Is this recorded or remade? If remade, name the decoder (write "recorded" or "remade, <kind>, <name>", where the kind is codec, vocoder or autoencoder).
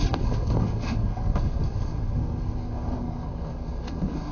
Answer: remade, codec, SNAC